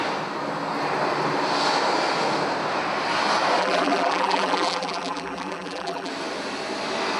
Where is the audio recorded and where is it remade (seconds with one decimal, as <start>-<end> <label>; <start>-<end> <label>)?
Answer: 0.0-3.6 recorded; 3.6-6.1 remade; 6.1-7.2 recorded